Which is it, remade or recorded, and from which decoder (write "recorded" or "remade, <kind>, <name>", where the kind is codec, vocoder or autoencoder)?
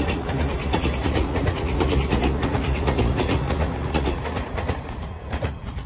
remade, vocoder, Vocos